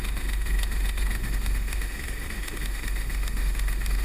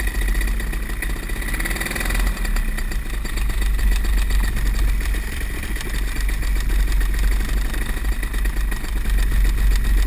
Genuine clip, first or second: second